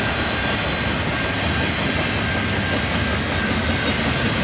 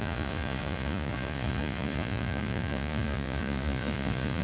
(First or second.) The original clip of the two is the first